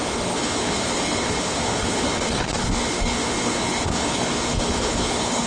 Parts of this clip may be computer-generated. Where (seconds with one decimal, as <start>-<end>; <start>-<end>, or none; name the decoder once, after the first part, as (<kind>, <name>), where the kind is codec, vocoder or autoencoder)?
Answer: 0.0-5.5 (codec, HILCodec)